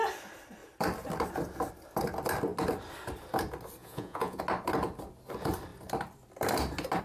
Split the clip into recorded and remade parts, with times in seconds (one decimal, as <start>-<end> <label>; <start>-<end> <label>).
0.0-3.8 recorded; 3.8-4.4 remade; 4.4-7.0 recorded